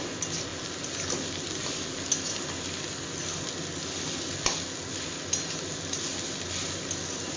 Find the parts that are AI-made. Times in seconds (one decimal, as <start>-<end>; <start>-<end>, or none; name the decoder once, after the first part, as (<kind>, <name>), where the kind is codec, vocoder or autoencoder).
none